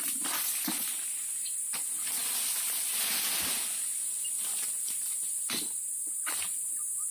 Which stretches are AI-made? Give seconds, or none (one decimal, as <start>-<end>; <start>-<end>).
none